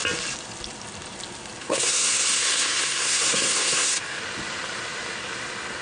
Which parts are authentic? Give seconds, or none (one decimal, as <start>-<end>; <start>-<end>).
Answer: 0.0-1.6; 4.2-5.8